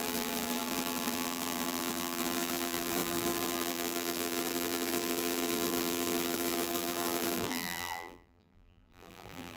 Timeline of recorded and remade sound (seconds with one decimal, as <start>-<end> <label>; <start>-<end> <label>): 0.0-9.6 remade